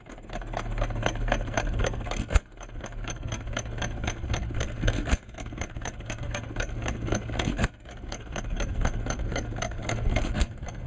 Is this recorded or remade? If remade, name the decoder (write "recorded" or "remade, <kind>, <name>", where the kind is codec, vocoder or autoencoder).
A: remade, codec, SNAC